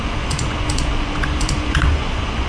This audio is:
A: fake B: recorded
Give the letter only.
A